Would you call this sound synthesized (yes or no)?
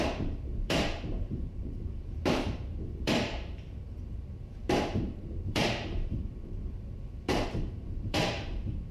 yes